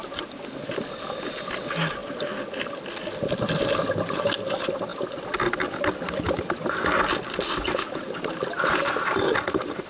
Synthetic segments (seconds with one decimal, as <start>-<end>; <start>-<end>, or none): none